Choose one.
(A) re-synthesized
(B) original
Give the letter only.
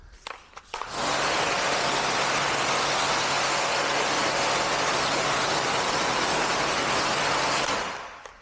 B